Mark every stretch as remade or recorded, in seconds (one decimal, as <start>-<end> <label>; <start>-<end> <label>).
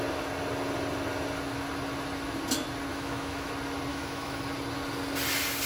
0.0-2.9 recorded; 2.9-3.5 remade; 3.5-3.9 recorded; 3.9-4.4 remade; 4.4-5.7 recorded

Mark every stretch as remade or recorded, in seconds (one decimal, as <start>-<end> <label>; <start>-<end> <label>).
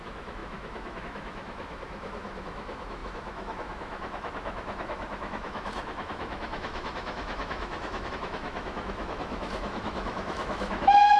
0.0-11.2 remade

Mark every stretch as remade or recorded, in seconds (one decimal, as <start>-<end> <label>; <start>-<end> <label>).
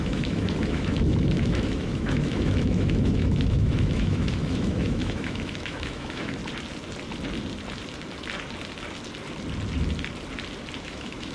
0.0-6.4 remade; 6.4-10.8 recorded; 10.8-11.3 remade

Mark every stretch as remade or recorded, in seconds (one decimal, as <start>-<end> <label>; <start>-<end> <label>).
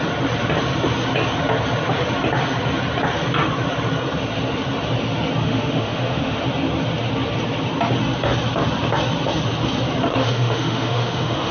0.0-5.4 recorded; 5.4-6.4 remade; 6.4-10.1 recorded; 10.1-11.5 remade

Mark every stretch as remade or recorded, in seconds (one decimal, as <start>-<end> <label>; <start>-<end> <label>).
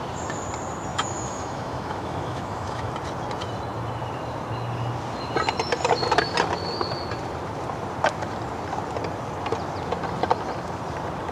0.0-0.9 recorded; 0.9-2.9 remade; 2.9-11.3 recorded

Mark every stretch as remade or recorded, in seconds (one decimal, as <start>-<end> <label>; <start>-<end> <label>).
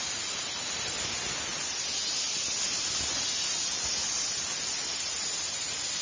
0.0-6.0 recorded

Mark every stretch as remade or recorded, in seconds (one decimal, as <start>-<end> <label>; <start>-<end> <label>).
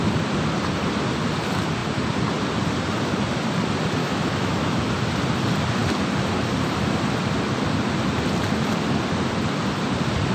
0.0-4.0 recorded; 4.0-4.9 remade; 4.9-10.3 recorded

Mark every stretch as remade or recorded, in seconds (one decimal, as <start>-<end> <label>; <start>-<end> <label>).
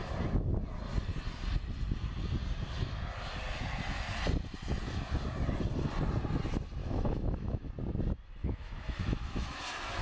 0.0-6.8 recorded; 6.8-7.7 remade; 7.7-8.4 recorded; 8.4-9.6 remade; 9.6-10.0 recorded